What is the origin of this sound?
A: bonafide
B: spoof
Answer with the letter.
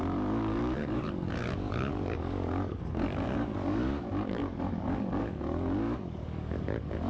B